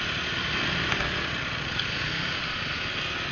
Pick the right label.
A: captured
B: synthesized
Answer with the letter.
A